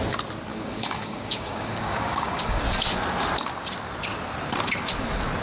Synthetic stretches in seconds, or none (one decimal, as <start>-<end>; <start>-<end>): 0.5-2.6